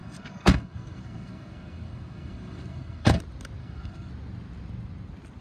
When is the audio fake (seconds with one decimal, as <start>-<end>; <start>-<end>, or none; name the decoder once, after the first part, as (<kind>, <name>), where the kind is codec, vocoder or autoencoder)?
0.0-3.2 (codec, SNAC); 3.6-4.1